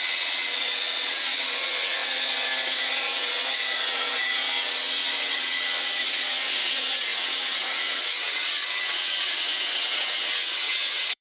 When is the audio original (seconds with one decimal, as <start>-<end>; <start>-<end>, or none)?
none